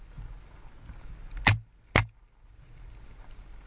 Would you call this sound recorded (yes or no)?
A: yes